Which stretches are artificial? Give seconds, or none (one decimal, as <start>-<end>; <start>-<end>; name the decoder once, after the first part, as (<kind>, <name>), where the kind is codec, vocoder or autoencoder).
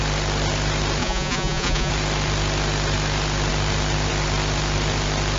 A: 1.0-1.9 (vocoder, Vocos)